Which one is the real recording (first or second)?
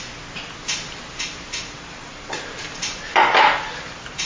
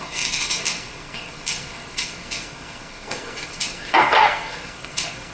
first